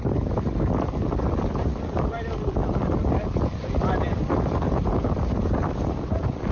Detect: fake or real real